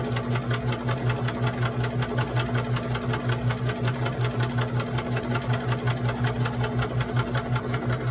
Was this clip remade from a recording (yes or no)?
no